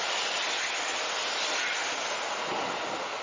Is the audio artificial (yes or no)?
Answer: no